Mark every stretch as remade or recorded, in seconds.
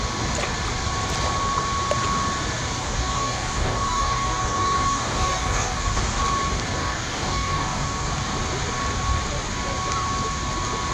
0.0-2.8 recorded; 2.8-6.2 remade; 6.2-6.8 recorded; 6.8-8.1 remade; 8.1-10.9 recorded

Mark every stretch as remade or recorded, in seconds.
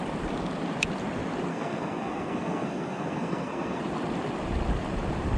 0.0-1.5 recorded; 1.5-3.8 remade; 3.8-5.4 recorded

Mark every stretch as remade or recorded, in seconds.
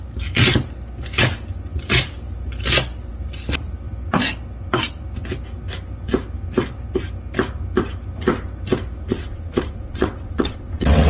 0.0-9.1 recorded; 9.1-11.1 remade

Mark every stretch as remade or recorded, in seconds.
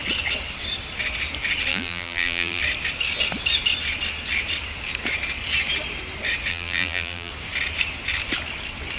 0.0-1.7 recorded; 1.7-2.6 remade; 2.6-6.5 recorded; 6.5-7.3 remade; 7.3-9.0 recorded